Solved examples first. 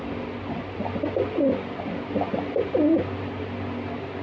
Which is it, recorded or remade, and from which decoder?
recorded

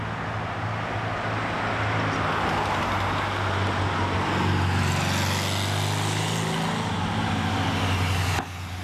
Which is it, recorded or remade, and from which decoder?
recorded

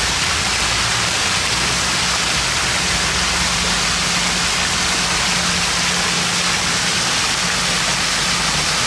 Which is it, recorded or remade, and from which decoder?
recorded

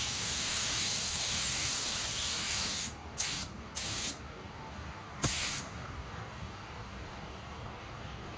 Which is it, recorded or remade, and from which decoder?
remade, codec, DAC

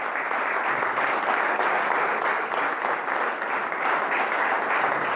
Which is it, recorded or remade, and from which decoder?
recorded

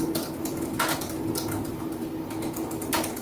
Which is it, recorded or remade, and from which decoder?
recorded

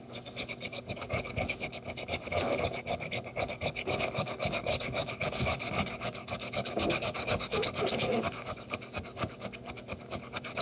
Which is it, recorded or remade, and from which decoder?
remade, codec, DAC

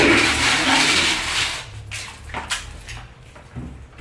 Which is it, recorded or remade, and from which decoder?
recorded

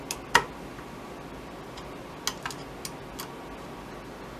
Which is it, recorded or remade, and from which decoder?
recorded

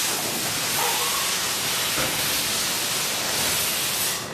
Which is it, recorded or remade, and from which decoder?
recorded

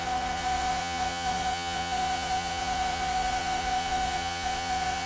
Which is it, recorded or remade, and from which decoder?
remade, vocoder, Vocos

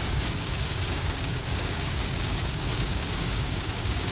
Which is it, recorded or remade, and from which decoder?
remade, codec, DAC